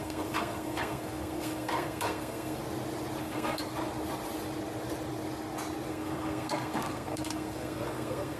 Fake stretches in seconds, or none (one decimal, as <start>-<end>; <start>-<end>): 0.0-2.6; 3.2-3.6; 5.9-8.4